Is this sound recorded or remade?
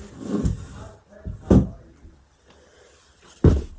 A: recorded